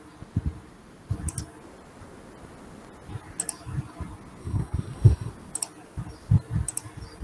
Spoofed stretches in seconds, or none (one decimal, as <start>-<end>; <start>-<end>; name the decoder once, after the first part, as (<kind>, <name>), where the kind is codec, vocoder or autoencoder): 4.4-5.3 (codec, SNAC)